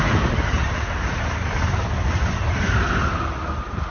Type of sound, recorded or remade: recorded